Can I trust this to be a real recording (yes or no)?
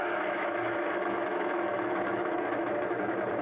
no